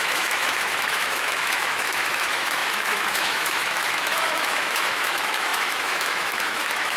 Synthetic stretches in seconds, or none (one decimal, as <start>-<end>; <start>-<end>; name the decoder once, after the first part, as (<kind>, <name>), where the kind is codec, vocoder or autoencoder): 0.0-7.0 (autoencoder, DAC-VAE)